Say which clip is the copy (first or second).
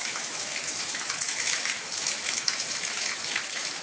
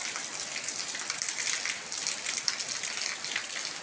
first